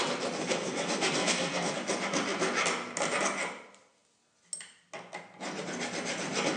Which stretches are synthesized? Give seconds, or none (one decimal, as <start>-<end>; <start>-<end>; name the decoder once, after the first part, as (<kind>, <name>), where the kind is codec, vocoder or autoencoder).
0.4-1.7 (codec, SNAC)